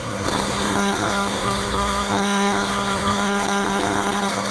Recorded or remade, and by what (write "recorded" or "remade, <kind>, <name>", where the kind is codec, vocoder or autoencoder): remade, codec, SNAC